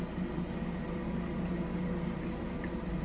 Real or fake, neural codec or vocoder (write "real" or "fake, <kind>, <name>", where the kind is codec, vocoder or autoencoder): real